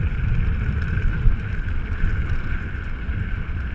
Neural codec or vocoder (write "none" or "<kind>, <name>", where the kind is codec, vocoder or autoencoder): none